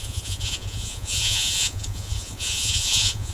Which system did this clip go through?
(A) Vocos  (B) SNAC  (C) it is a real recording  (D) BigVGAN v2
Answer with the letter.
A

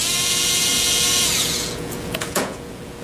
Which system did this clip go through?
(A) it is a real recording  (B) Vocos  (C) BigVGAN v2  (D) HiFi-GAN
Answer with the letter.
B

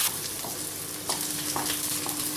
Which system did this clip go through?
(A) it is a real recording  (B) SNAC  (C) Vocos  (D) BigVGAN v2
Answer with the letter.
A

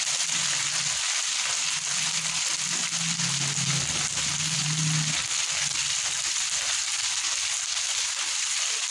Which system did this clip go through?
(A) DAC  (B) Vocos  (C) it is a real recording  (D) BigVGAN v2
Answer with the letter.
C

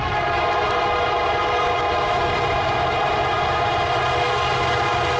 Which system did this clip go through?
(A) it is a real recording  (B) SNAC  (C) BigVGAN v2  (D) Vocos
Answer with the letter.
A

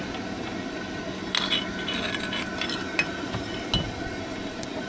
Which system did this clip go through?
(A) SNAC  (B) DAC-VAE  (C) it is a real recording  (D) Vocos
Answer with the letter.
C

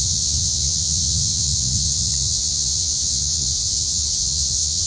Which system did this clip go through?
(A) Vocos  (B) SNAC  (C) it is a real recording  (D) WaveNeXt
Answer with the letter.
A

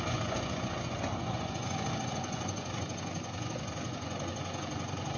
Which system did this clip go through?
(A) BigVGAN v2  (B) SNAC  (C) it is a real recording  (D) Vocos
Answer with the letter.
D